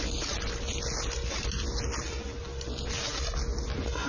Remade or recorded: recorded